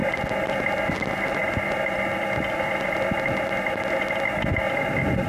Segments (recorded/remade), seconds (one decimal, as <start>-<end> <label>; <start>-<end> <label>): 0.0-5.3 recorded